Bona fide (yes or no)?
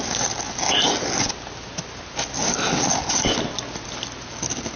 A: yes